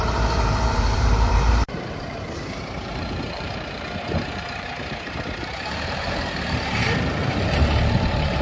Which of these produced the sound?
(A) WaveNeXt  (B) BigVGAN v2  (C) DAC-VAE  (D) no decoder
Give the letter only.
B